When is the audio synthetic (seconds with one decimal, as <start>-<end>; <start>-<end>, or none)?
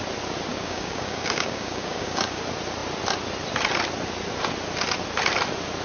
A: 0.5-2.4